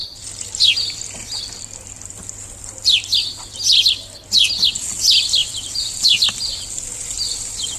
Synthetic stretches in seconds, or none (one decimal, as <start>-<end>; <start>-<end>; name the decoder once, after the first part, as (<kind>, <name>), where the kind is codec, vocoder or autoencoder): none